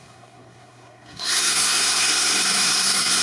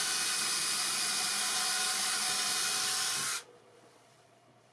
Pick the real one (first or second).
second